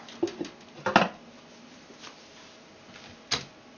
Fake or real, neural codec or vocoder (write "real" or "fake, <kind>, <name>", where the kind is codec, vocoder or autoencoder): real